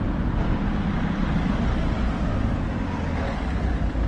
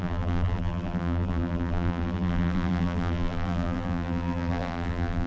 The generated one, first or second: second